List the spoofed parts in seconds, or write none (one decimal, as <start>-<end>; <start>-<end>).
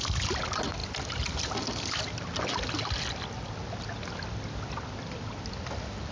none